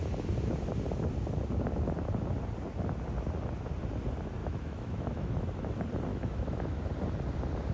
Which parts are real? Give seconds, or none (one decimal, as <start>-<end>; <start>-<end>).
0.0-4.4; 5.4-6.1; 6.8-7.7